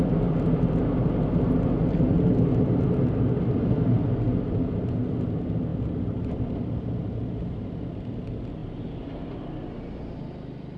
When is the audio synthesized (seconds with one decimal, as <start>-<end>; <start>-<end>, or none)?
none